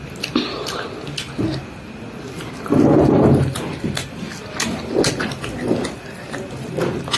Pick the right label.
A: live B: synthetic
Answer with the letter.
A